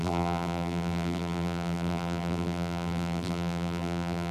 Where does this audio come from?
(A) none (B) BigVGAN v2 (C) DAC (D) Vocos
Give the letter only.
B